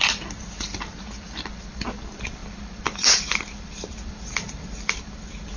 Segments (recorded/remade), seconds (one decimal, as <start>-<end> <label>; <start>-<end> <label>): 0.0-5.6 remade